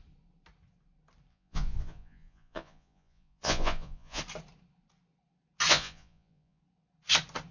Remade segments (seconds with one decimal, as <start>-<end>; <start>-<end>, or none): 1.3-4.2; 5.7-6.6